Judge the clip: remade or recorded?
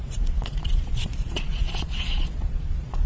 remade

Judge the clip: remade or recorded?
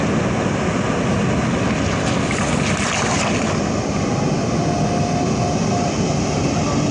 recorded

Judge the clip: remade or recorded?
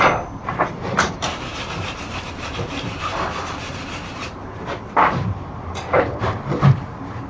remade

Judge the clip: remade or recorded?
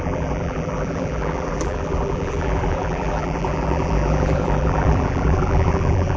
remade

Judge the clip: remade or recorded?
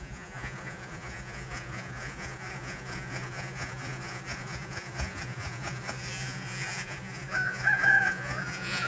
remade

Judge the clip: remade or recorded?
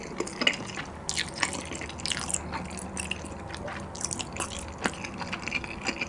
recorded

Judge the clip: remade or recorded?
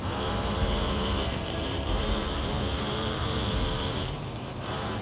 remade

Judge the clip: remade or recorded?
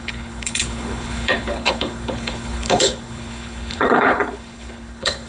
remade